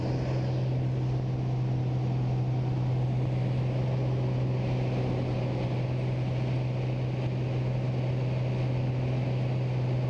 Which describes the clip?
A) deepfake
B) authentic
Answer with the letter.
B